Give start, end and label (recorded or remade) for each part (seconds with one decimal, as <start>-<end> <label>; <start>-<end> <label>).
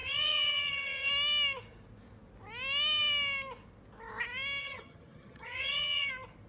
0.0-1.1 remade; 1.1-4.6 recorded; 4.6-6.1 remade; 6.1-6.5 recorded